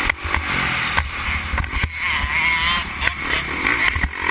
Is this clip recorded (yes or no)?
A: yes